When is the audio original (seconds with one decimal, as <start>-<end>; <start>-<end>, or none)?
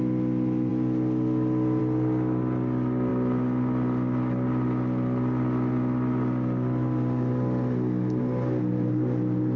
0.0-9.6